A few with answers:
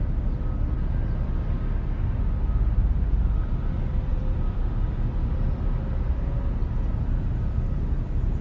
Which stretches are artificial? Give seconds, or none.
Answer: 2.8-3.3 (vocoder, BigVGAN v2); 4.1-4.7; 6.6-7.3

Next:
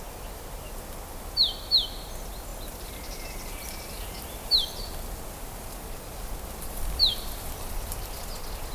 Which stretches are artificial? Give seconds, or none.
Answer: none

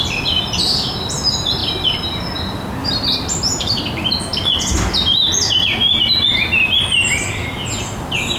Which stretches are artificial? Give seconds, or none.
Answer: 2.8-3.8 (vocoder, BigVGAN v2)

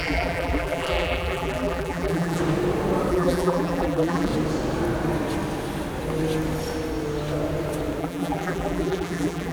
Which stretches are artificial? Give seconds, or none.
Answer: 0.0-2.4 (vocoder, BigVGAN v2); 3.1-4.3; 8.0-9.5

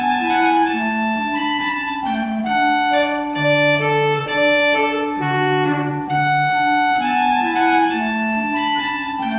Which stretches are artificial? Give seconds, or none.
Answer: 1.4-2.4 (vocoder, BigVGAN v2); 4.2-5.9

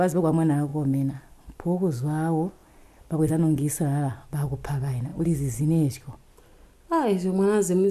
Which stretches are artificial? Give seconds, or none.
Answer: none

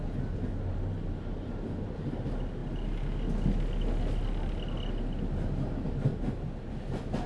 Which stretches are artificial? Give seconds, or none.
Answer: 6.1-6.7 (vocoder, BigVGAN v2)